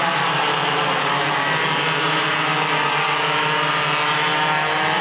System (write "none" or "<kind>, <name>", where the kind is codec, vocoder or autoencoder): none